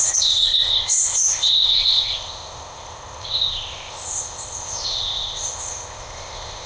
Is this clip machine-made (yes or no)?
yes